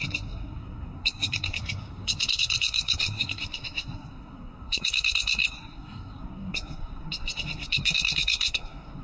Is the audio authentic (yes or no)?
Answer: no